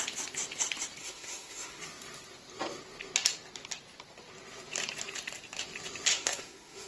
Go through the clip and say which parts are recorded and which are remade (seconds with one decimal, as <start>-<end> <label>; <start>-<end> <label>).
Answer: 0.0-1.0 recorded; 1.0-1.8 remade; 1.8-6.1 recorded; 6.1-6.9 remade